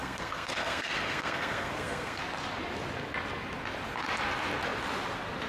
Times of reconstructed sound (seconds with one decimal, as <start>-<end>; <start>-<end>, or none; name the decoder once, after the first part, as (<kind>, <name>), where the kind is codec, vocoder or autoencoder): 0.0-2.2 (codec, SNAC)